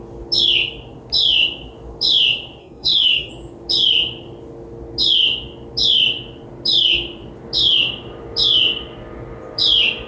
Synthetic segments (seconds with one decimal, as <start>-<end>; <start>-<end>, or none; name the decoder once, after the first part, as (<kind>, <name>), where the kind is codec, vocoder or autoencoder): 2.6-3.3 (codec, DAC)